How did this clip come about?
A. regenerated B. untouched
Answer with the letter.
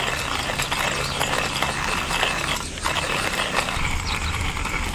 B